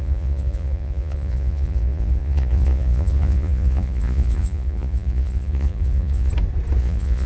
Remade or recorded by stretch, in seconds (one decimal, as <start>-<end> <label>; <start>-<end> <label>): 0.0-6.3 remade; 6.3-6.8 recorded; 6.8-7.3 remade